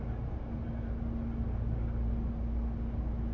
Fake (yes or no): no